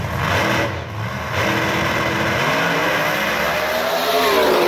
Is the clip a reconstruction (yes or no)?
no